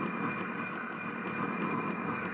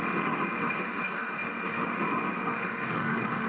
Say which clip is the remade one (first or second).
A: second